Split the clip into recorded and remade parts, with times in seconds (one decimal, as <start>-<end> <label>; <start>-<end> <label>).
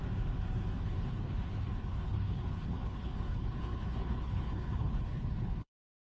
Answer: 0.0-0.8 recorded; 0.8-6.1 remade